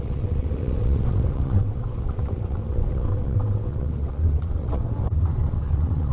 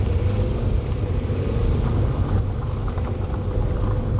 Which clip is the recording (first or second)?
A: second